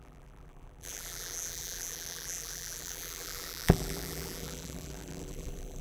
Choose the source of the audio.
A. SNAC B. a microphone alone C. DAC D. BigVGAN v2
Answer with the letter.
D